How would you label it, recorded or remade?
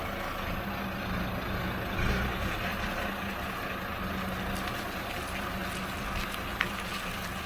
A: recorded